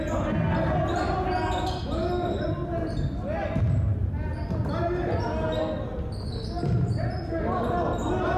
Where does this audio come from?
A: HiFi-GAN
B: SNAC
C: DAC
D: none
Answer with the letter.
D